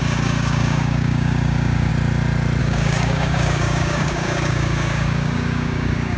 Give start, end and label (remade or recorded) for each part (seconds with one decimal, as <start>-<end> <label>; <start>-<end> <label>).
0.0-1.9 remade; 1.9-2.6 recorded; 2.6-6.2 remade